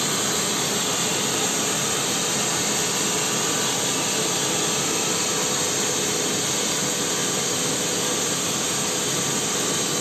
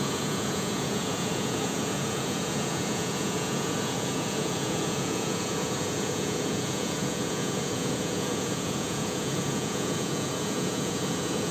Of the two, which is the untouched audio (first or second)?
first